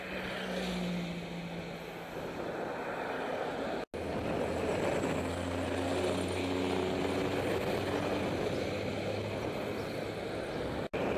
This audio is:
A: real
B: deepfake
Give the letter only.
A